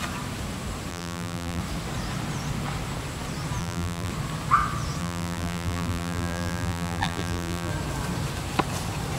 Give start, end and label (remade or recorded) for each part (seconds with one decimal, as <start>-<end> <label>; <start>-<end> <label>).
0.0-0.9 recorded; 0.9-1.6 remade; 1.6-3.6 recorded; 3.6-4.1 remade; 4.1-5.0 recorded; 5.0-7.7 remade; 7.7-9.2 recorded